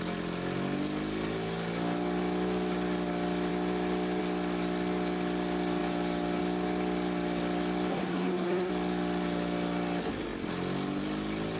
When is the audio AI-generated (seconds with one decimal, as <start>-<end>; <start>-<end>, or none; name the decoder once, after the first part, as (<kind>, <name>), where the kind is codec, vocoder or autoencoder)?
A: 7.9-8.7 (codec, SNAC)